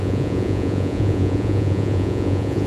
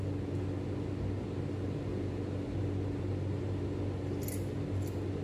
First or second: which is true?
second